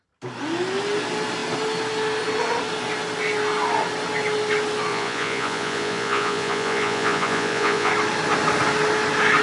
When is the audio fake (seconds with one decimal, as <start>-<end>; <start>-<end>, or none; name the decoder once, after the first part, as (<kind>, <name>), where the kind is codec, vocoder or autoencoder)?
4.9-7.9 (vocoder, Vocos)